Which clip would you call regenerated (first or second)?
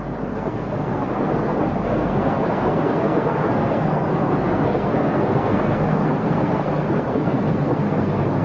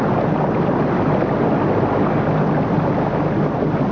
first